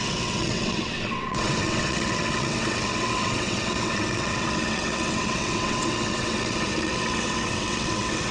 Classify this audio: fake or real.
fake